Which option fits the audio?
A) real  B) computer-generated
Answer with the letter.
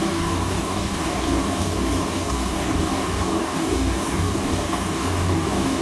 B